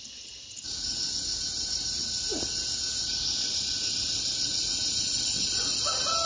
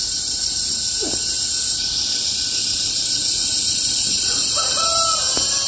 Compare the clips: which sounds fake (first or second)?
second